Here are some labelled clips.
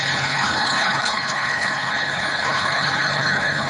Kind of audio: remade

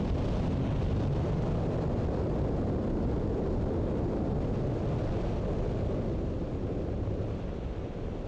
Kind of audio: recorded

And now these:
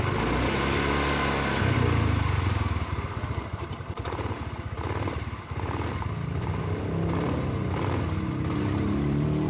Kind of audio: recorded